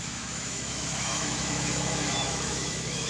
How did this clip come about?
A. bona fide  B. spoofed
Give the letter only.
B